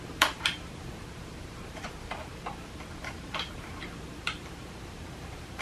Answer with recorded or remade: remade